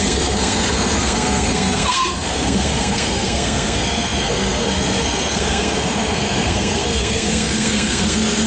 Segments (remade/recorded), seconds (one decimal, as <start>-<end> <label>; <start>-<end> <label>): 0.0-8.5 remade